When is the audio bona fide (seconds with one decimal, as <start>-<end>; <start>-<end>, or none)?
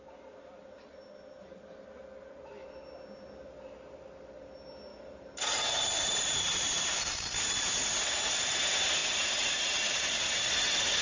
0.0-4.9; 8.6-9.0; 10.5-11.0